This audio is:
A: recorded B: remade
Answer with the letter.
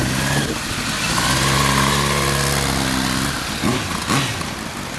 A